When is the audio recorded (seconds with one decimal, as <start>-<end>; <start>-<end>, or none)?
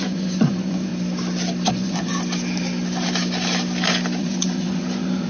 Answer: 0.9-1.7; 2.1-4.2